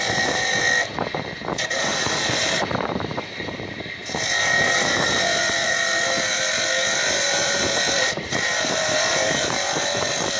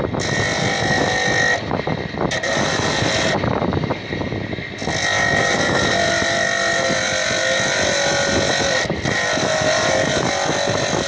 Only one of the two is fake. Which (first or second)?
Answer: first